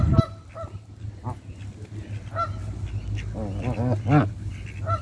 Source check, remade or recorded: recorded